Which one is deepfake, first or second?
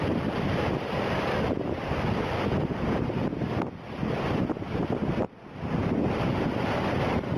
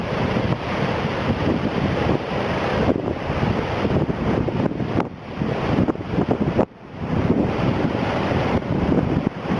second